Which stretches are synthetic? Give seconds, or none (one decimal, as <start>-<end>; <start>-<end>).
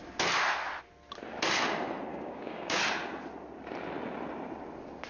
2.1-2.8